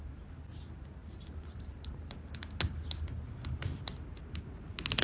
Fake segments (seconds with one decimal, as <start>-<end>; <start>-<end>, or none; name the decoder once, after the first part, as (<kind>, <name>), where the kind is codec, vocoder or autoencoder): 1.0-2.2 (vocoder, BigVGAN v2)